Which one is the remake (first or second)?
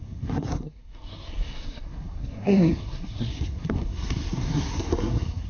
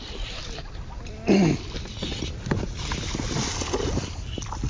first